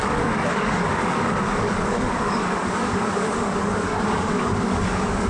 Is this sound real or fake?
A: fake